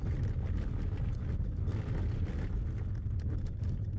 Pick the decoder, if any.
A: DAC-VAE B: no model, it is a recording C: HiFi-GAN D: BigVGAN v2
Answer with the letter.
B